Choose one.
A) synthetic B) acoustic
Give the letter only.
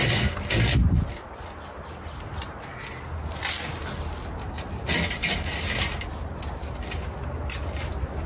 B